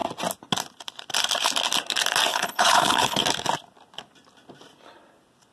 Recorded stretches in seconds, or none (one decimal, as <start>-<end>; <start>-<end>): 0.0-2.3; 3.2-5.5